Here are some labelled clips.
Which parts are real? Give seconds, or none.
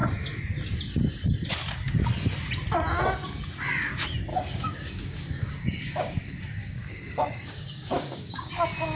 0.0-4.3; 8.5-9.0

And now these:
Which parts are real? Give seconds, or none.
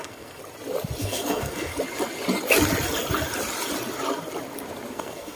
0.4-1.0; 1.7-4.9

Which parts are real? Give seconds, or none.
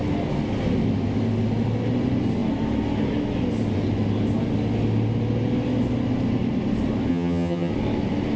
0.0-7.1; 7.7-8.4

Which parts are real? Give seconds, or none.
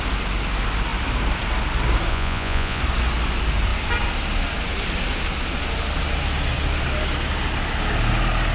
0.0-2.1; 2.8-8.5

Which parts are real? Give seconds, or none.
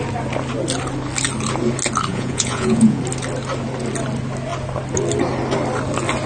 0.0-2.1; 3.0-6.3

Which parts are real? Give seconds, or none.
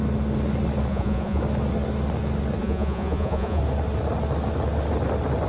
0.0-0.9; 1.4-2.6; 3.6-5.5